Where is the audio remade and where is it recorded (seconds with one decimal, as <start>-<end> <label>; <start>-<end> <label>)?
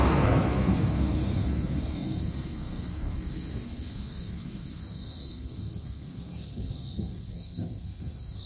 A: 0.0-8.5 remade